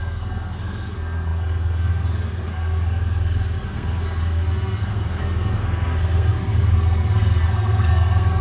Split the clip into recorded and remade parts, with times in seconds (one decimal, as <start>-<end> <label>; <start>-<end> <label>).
0.0-8.4 remade